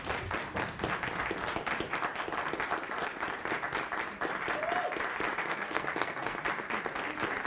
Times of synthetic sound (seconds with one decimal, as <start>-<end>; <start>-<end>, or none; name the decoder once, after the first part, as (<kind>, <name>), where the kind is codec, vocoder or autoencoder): 5.4-6.4 (codec, SNAC)